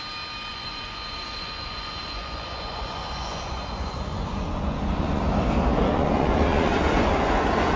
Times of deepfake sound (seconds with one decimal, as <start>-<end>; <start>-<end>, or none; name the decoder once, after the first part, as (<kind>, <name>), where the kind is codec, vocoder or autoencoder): 0.5-5.2 (vocoder, Vocos); 5.9-7.8